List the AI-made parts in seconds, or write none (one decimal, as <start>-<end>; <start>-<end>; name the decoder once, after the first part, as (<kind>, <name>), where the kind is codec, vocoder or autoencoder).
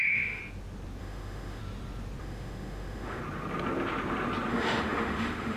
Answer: 0.0-0.4 (autoencoder, DAC-VAE); 1.0-1.6; 2.2-3.2; 4.5-5.6